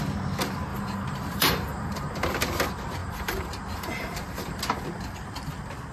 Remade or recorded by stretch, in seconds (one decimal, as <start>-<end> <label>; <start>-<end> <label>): 0.0-0.7 recorded; 0.7-2.1 remade; 2.1-3.0 recorded; 3.0-4.6 remade; 4.6-5.9 recorded